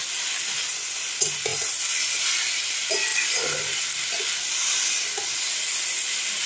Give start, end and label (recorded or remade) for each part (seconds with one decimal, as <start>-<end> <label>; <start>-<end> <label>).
0.0-6.5 recorded